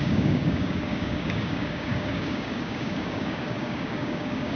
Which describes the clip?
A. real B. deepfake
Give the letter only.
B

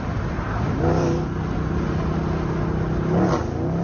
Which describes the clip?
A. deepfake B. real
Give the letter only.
B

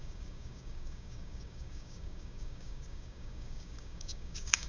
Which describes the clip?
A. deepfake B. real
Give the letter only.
A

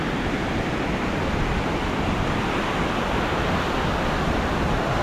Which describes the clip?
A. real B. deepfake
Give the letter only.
A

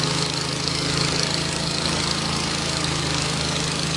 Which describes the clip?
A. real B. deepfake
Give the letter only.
B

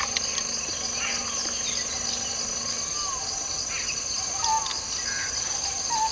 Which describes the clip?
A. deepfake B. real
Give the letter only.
B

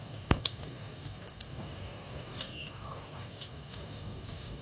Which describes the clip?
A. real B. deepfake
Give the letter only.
B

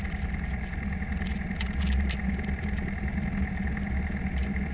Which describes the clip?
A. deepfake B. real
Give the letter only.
B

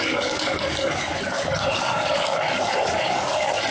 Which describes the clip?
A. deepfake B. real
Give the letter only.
A